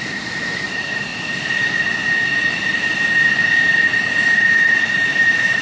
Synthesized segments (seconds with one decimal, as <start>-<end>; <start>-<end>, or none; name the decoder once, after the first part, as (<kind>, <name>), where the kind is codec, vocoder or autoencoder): 0.0-1.1 (vocoder, BigVGAN v2); 2.4-5.6